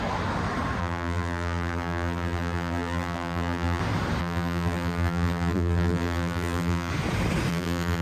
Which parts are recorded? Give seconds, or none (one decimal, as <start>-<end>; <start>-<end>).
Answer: 0.0-0.8; 3.8-4.2; 6.9-7.5